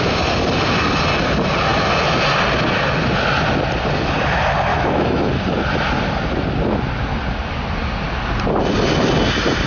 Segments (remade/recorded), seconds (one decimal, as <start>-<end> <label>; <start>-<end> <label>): 0.0-4.7 recorded; 4.7-5.3 remade; 5.3-9.7 recorded